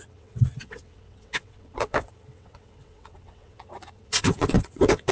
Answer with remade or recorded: remade